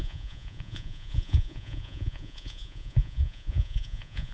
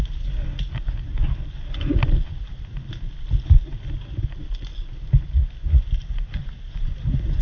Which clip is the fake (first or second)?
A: first